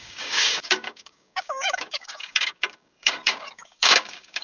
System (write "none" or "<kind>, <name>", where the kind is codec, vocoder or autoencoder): codec, DAC